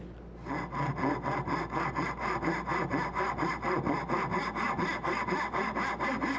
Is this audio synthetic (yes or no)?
no